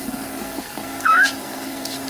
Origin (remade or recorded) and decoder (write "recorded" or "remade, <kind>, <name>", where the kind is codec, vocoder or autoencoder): remade, codec, SNAC